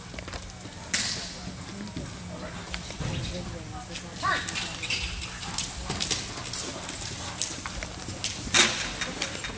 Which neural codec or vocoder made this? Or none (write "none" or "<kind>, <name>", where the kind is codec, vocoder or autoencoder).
none